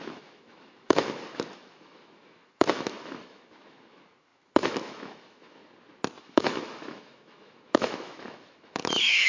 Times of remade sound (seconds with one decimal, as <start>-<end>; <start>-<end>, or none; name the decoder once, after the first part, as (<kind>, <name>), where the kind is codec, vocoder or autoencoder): 0.0-5.6 (autoencoder, DAC-VAE); 6.2-9.3